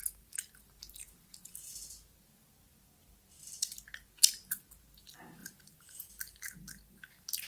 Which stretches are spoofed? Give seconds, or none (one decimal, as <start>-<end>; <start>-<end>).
0.0-1.7; 5.4-6.0